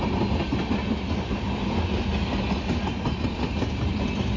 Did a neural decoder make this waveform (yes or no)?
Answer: no